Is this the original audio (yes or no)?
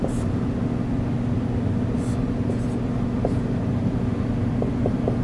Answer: yes